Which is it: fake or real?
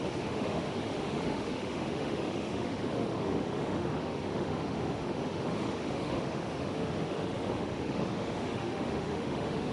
fake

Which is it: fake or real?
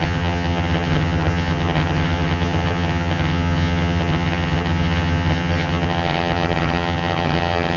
fake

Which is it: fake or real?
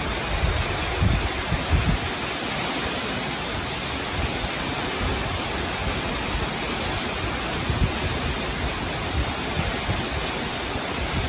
real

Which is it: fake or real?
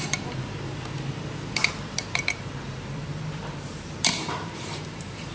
fake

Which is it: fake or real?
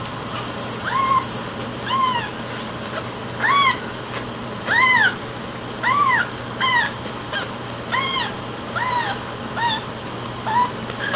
real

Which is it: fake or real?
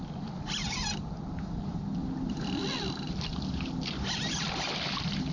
real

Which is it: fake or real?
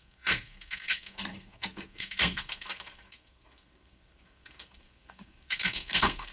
fake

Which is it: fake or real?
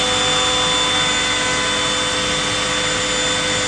real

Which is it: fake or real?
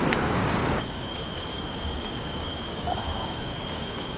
fake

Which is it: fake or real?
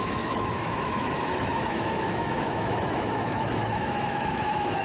fake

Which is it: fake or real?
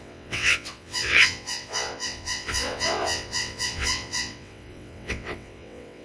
fake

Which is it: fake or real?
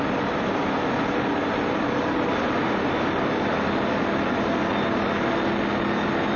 real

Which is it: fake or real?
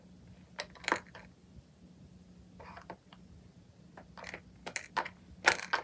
real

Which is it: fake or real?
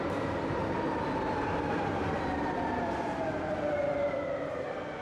real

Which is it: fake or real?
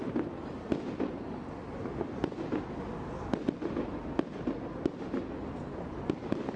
real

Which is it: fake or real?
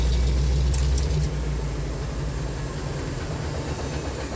real